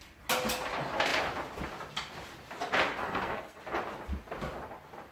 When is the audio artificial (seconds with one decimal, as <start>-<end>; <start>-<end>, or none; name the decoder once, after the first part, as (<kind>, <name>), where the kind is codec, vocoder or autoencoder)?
3.0-3.6 (codec, SNAC)